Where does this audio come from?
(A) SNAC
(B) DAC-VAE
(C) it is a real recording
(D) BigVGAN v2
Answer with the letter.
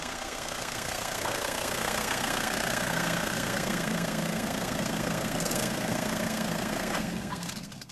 A